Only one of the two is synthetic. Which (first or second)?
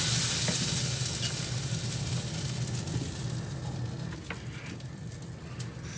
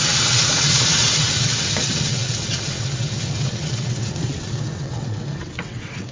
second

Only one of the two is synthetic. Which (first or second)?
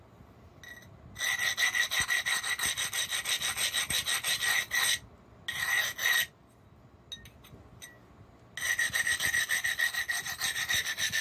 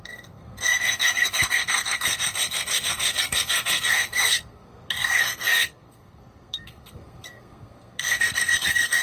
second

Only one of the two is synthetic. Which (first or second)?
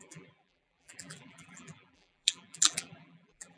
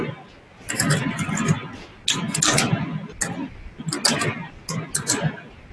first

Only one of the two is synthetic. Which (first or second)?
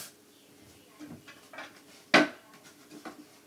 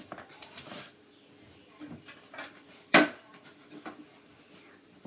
second